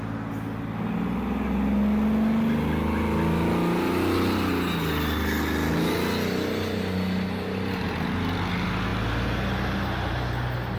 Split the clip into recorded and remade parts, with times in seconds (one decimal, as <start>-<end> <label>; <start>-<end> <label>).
0.0-10.8 recorded